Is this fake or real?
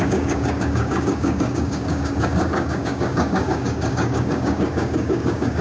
fake